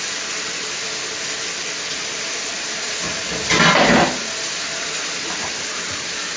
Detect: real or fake real